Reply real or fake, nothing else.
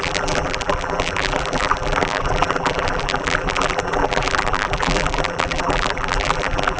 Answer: fake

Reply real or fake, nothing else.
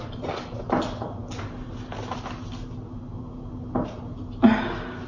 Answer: real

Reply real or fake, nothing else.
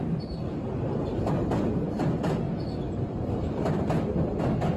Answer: real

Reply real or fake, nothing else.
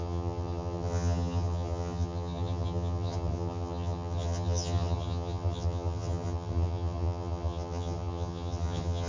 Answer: fake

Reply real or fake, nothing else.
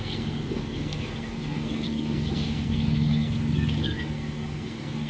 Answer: fake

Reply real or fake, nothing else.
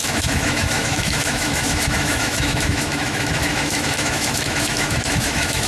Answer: fake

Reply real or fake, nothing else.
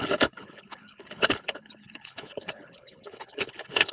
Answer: fake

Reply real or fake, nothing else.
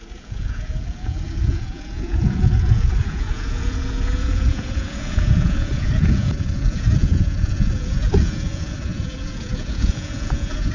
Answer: fake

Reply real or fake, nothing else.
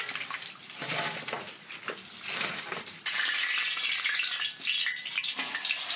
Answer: fake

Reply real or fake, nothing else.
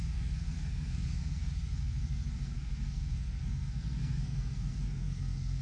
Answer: fake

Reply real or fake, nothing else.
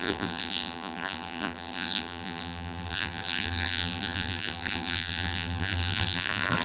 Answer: fake